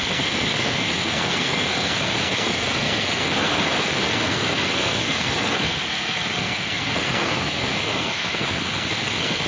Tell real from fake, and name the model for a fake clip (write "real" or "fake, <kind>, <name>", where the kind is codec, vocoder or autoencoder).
fake, codec, SNAC